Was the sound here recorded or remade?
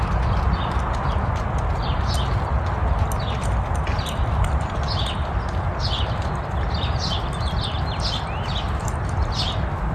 recorded